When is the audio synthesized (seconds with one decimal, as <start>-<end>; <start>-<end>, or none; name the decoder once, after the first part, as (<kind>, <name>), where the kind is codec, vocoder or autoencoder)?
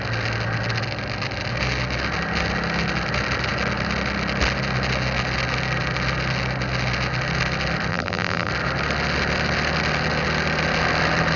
7.9-8.5 (vocoder, BigVGAN v2)